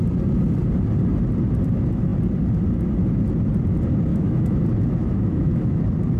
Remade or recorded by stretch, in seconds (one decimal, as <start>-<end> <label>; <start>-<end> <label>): 0.0-4.1 recorded; 4.1-4.6 remade; 4.6-5.0 recorded; 5.0-5.8 remade; 5.8-6.2 recorded